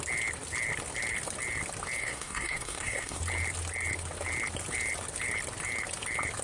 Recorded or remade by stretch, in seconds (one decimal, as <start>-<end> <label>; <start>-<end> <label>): 0.0-2.0 recorded; 2.0-3.2 remade; 3.2-6.4 recorded